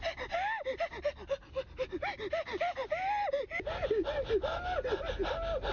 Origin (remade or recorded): recorded